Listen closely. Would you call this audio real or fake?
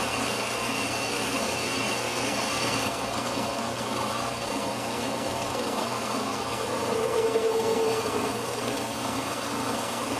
fake